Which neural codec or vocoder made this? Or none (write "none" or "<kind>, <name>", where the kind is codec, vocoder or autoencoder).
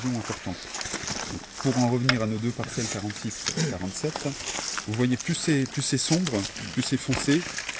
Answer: none